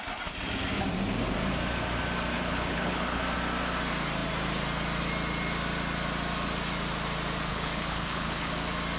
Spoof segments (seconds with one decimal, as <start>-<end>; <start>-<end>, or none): 2.3-3.2; 7.5-8.5